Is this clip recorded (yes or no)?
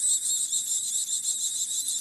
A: yes